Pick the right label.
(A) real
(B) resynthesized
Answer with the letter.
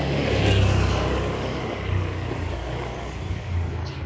B